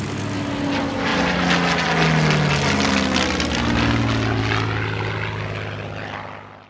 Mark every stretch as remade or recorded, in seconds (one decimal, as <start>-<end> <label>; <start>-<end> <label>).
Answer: 0.0-6.7 recorded